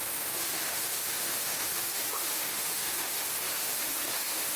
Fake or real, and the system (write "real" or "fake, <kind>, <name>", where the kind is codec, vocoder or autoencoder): fake, autoencoder, DAC-VAE